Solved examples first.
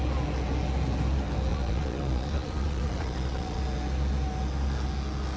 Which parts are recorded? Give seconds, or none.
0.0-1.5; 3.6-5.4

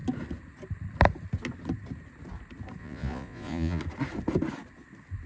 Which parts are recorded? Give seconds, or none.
0.0-2.8; 3.8-5.3

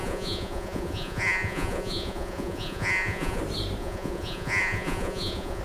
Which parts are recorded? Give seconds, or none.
3.4-3.8

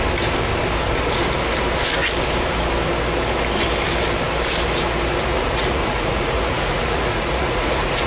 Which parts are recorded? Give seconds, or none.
0.0-5.3

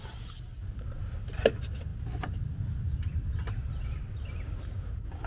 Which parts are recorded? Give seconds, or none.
0.0-5.3

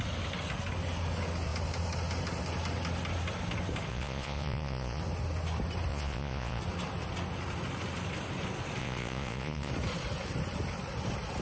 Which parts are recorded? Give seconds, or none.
0.0-3.9; 5.0-5.9; 6.6-8.8; 9.7-11.4

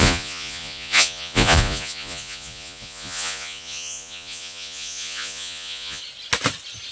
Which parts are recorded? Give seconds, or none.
6.0-6.9

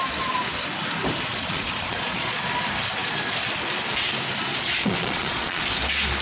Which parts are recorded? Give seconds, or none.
0.0-1.3; 2.4-4.5; 5.6-6.2